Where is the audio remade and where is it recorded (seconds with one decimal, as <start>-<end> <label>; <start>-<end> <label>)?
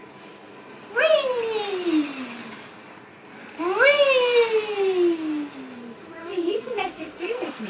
0.0-6.2 recorded; 6.2-7.7 remade